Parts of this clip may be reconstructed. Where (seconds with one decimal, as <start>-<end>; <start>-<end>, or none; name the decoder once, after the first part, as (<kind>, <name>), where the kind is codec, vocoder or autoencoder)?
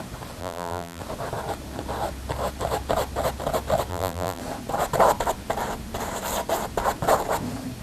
0.4-1.0 (vocoder, BigVGAN v2); 3.9-4.4